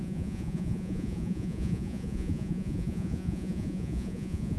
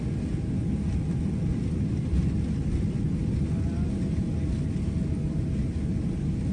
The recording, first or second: second